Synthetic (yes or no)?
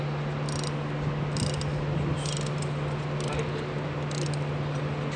no